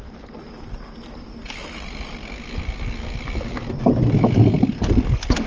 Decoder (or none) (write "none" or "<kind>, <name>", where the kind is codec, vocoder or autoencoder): none